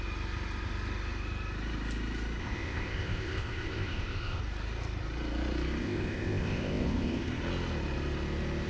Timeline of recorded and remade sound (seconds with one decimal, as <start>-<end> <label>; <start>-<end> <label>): 0.0-2.4 recorded; 2.4-4.4 remade; 4.4-5.8 recorded; 5.8-7.3 remade; 7.3-8.7 recorded